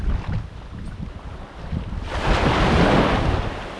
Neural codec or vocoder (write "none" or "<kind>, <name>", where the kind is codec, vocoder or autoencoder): none